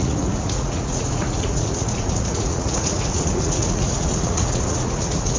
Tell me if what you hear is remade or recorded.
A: remade